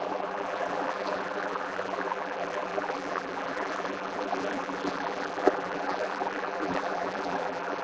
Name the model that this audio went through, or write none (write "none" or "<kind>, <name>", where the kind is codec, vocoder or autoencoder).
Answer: vocoder, BigVGAN v2